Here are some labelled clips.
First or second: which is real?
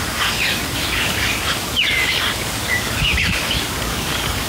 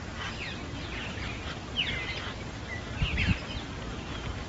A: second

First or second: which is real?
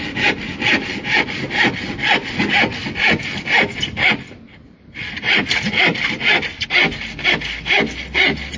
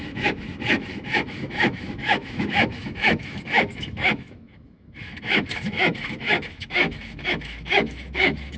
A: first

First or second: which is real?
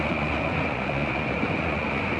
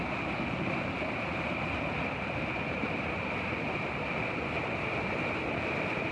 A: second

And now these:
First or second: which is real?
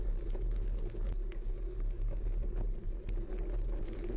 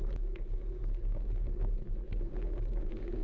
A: first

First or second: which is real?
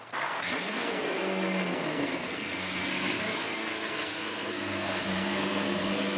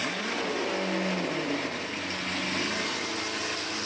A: second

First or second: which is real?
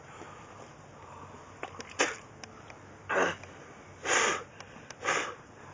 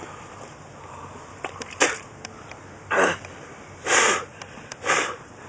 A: first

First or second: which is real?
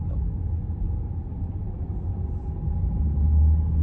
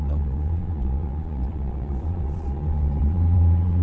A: first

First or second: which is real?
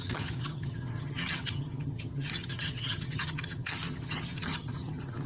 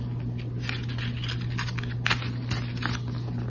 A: second